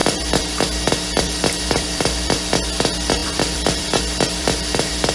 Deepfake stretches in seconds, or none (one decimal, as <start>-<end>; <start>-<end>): 0.0-2.5; 3.2-5.1